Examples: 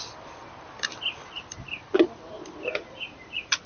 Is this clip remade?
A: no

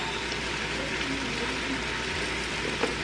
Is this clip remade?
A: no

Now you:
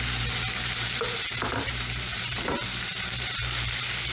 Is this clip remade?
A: yes